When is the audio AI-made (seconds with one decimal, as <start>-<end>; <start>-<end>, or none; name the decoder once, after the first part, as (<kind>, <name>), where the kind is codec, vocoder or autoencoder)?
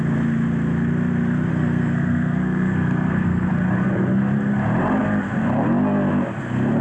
1.5-3.5 (codec, SNAC)